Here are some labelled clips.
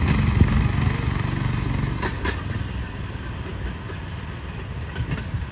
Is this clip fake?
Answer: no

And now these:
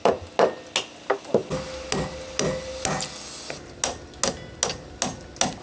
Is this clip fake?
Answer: no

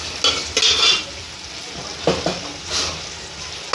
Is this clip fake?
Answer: no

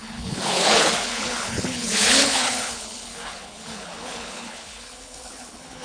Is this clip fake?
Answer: yes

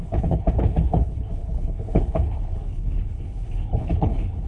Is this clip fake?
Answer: yes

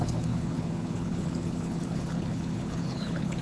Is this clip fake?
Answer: yes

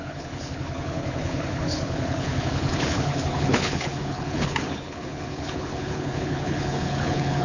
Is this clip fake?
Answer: yes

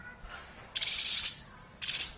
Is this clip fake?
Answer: no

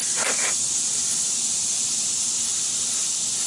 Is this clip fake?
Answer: no